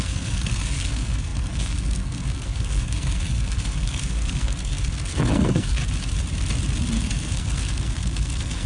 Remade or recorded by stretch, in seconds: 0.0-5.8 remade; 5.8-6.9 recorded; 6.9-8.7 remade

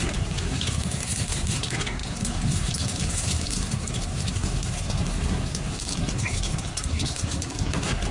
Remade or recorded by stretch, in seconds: 0.0-8.1 remade

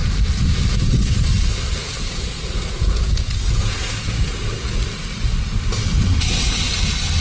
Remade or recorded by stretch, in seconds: 0.0-1.8 recorded; 1.8-4.8 remade; 4.8-7.2 recorded

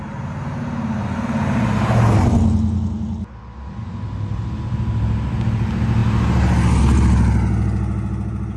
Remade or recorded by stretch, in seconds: 0.0-8.6 recorded